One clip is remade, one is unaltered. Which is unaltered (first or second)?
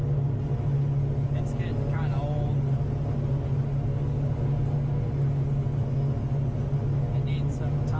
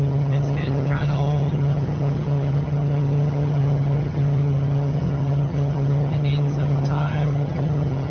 first